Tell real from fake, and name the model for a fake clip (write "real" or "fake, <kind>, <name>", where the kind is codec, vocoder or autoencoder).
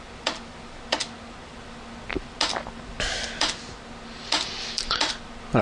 real